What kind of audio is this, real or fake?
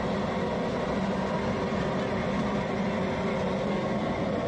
real